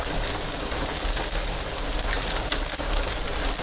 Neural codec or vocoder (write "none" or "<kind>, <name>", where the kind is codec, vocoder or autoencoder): none